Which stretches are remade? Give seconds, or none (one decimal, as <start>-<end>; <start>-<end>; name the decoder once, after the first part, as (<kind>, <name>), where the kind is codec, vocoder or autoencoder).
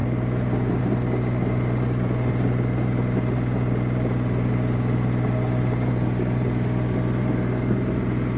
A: none